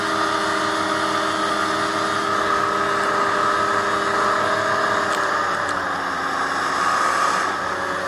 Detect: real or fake real